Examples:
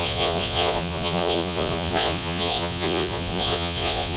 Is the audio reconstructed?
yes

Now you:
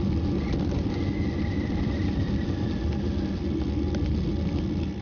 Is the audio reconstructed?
no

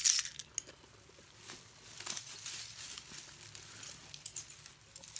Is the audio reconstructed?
no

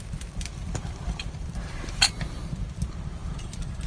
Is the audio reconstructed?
yes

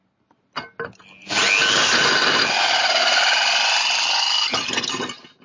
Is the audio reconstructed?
no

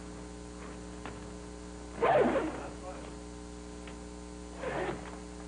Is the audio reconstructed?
no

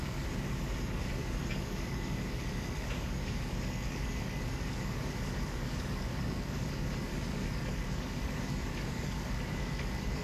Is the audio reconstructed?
yes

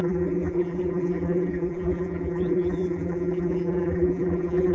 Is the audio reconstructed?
yes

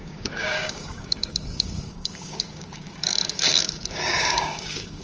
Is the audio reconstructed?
yes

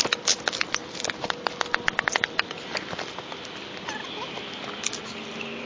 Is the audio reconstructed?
no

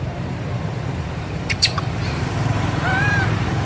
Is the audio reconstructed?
yes